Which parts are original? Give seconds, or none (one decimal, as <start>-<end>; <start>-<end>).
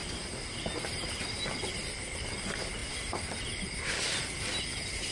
0.0-5.1